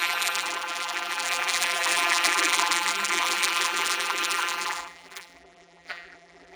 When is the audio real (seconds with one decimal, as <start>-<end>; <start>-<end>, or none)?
none